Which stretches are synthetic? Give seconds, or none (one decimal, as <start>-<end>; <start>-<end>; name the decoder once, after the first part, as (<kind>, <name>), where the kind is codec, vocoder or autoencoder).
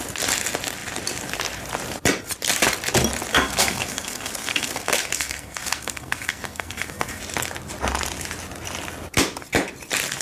3.3-7.2 (codec, SNAC)